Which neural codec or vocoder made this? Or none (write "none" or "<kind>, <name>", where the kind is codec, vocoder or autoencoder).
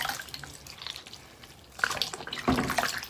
none